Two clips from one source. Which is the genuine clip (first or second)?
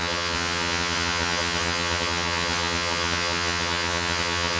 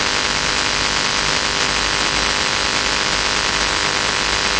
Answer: second